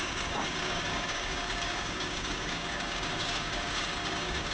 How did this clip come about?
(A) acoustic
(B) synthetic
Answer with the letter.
B